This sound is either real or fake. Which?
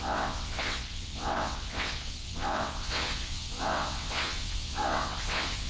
fake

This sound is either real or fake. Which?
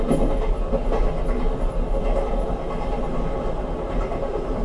real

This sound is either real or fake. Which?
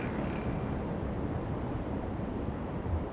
fake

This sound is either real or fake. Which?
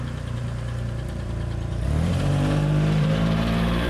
fake